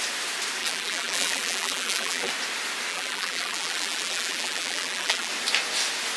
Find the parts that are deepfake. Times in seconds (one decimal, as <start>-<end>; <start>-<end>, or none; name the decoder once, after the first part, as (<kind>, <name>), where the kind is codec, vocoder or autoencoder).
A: 0.6-2.3 (vocoder, BigVGAN v2); 2.9-5.3

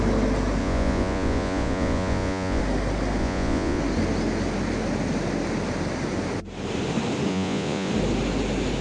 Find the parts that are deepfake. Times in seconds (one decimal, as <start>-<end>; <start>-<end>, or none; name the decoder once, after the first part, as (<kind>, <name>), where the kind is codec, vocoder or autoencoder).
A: 0.6-2.6 (vocoder, Vocos); 3.2-3.8; 7.3-7.9

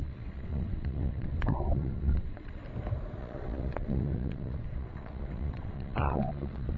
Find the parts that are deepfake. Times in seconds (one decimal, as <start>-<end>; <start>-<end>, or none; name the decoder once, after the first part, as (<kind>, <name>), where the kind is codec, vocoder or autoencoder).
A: 0.0-2.6 (vocoder, WaveNeXt); 3.2-6.8

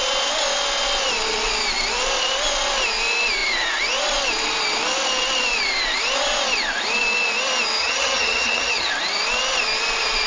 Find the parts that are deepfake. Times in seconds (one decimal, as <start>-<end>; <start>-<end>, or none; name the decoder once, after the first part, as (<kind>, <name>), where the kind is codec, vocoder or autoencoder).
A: 7.8-8.9 (vocoder, HiFi-GAN)

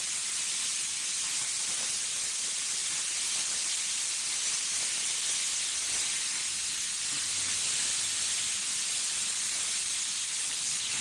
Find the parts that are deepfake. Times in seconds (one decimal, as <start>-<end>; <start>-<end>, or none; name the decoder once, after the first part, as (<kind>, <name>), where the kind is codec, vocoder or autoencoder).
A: 10.2-11.0 (codec, HILCodec)

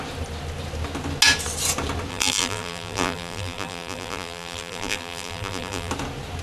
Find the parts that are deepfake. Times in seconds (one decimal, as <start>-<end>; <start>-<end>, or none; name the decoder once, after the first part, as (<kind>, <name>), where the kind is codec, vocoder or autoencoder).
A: 2.1-5.9 (vocoder, BigVGAN v2)